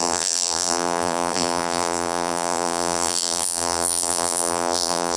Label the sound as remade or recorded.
remade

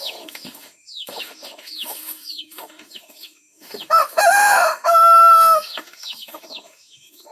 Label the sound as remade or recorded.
remade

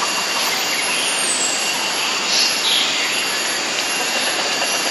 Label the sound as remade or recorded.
recorded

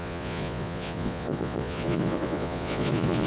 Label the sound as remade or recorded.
remade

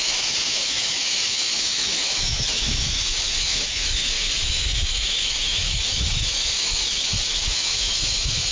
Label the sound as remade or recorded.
remade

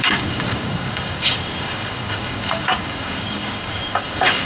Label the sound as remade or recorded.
remade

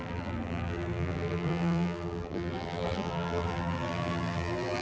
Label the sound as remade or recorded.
remade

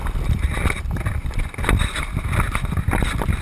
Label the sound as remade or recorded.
recorded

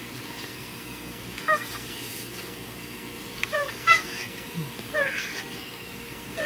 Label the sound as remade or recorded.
remade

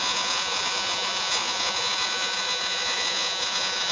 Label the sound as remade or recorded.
remade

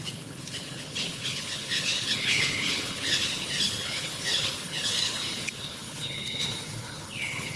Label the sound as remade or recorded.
remade